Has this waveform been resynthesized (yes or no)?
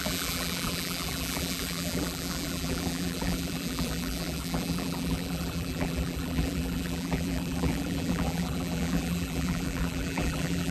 yes